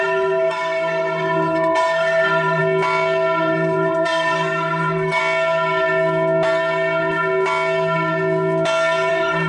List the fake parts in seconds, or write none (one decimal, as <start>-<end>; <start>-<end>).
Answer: 0.0-2.6; 3.4-5.2; 9.1-9.5